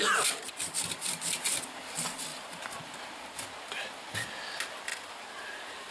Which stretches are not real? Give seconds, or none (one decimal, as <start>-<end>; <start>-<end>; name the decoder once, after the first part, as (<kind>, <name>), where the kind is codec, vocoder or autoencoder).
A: 2.3-3.2 (vocoder, BigVGAN v2); 4.9-5.9